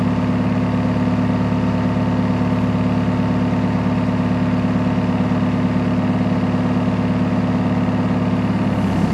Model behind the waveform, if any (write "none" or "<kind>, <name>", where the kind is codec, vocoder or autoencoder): none